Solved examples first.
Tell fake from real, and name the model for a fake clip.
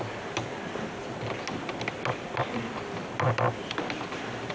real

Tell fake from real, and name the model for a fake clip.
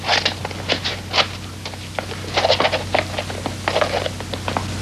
real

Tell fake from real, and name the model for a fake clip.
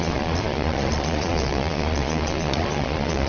fake, vocoder, Vocos